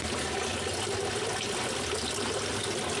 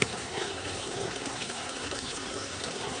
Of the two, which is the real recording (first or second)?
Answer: first